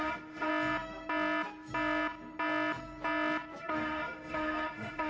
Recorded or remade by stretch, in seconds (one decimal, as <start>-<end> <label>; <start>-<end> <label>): 0.0-0.5 remade; 0.5-3.6 recorded; 3.6-5.1 remade